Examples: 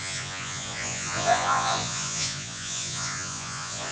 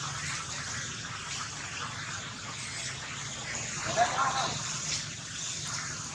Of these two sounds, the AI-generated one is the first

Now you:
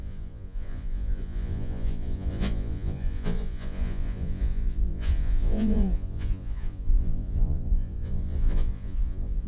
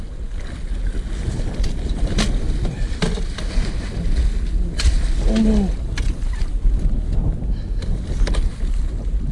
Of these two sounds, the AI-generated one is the first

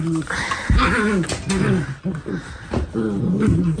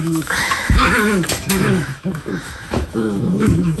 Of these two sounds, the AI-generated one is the second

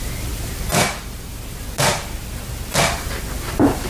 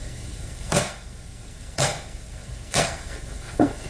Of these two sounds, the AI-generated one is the second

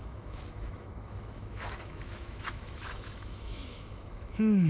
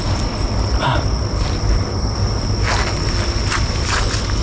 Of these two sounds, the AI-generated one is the first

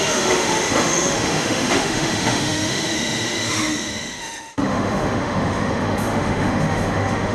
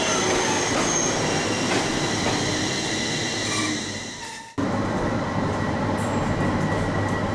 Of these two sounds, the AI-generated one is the first